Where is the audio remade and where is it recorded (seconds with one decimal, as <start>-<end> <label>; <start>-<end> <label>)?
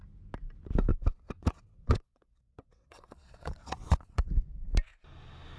0.0-0.9 recorded; 0.9-4.3 remade; 4.3-5.6 recorded